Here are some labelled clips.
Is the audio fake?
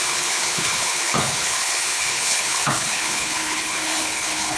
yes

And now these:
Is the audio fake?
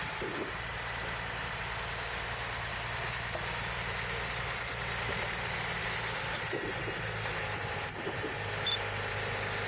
no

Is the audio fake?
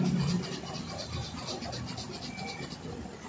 no